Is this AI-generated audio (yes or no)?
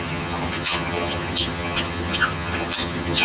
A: yes